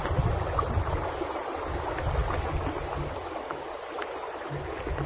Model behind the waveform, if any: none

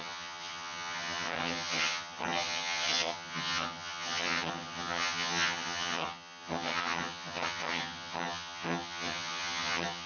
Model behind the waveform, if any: vocoder, HiFi-GAN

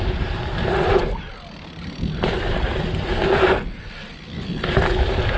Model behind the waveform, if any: none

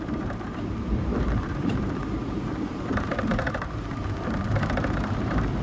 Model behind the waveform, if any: vocoder, BigVGAN v2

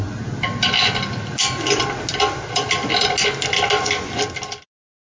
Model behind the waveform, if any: none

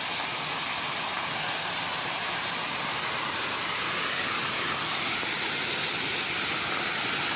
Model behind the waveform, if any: none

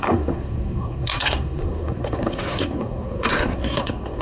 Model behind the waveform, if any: codec, SNAC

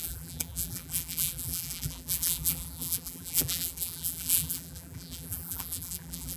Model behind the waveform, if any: vocoder, BigVGAN v2